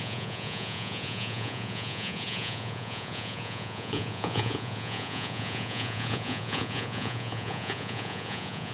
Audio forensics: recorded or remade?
remade